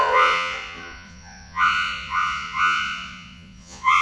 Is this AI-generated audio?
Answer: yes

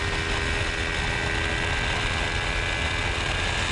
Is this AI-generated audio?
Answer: no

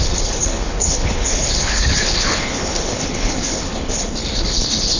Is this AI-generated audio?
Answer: yes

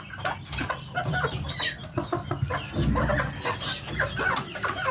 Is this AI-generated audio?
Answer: no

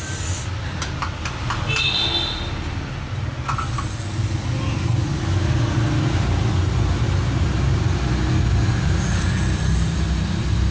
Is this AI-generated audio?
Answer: no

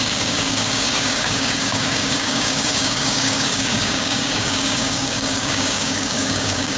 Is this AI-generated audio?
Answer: yes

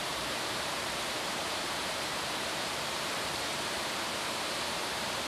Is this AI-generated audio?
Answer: yes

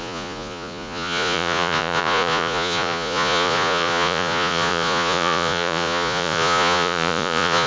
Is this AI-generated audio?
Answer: yes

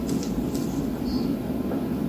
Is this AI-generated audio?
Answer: no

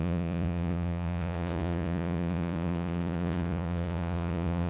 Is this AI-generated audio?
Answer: yes